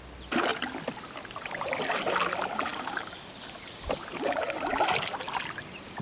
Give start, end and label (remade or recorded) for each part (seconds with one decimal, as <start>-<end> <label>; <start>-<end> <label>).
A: 0.0-6.0 recorded